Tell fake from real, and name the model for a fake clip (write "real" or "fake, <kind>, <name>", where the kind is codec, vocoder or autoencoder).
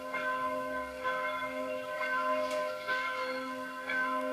fake, codec, SNAC